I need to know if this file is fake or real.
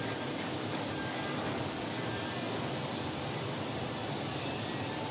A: fake